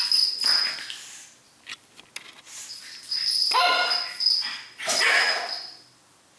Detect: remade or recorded recorded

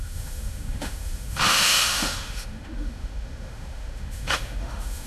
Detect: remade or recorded remade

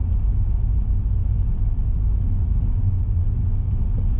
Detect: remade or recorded recorded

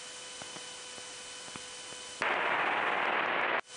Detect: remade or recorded recorded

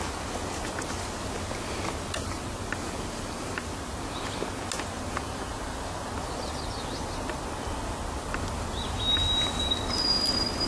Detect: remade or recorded recorded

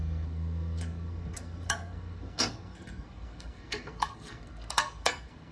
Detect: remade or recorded remade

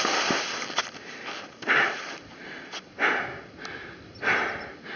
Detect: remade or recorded recorded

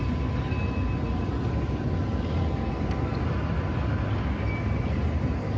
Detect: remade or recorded recorded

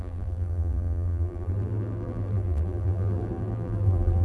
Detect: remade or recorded remade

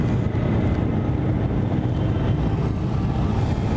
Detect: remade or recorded recorded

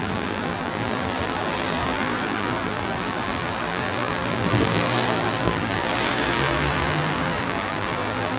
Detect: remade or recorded remade